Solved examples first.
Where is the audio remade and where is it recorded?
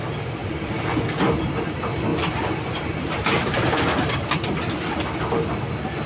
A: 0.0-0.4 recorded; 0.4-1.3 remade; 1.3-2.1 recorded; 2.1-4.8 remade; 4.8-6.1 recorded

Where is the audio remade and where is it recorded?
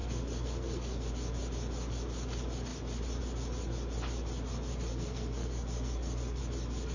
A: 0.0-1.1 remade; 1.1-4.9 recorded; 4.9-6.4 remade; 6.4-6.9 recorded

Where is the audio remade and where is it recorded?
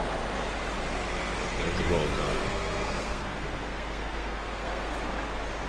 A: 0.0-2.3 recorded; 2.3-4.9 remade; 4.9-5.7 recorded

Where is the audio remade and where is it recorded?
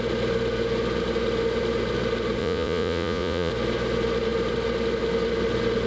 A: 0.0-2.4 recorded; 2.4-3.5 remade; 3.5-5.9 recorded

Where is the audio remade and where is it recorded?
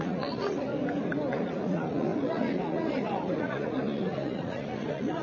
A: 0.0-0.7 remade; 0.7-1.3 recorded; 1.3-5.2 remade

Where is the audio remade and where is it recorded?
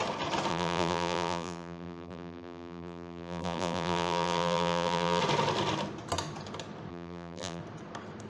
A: 0.0-0.5 recorded; 0.5-5.2 remade; 5.2-6.9 recorded; 6.9-7.6 remade; 7.6-8.3 recorded